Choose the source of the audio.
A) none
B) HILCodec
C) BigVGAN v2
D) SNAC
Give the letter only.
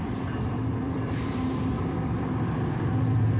C